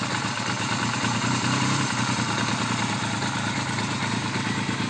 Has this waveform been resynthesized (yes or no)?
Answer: no